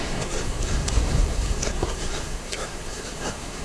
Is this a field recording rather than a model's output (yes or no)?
no